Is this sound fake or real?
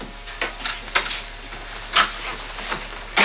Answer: real